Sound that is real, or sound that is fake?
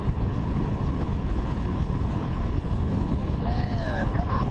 fake